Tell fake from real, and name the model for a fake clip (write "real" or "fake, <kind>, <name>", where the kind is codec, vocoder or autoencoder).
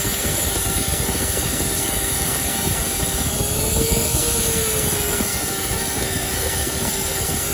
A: fake, codec, SNAC